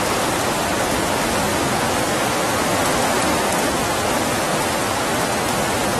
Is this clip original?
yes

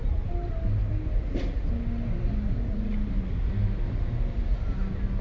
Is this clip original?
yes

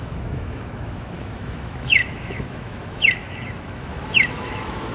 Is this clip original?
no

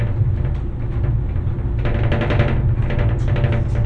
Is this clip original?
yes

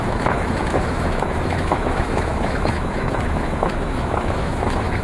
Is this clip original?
no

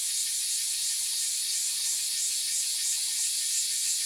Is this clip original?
yes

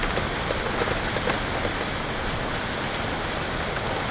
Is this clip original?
yes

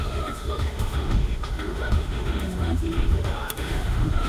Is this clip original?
no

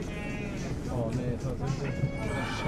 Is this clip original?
yes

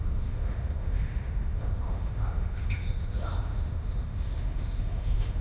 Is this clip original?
no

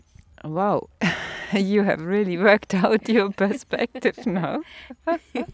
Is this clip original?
yes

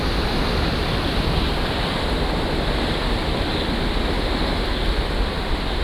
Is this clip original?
yes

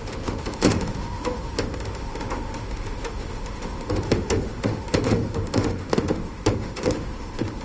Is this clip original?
no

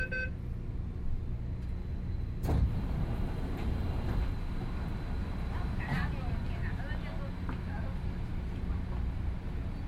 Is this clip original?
yes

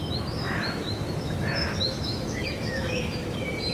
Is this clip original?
no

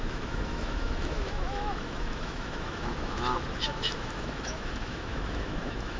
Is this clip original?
no